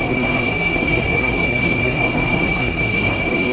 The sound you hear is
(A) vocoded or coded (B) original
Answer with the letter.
A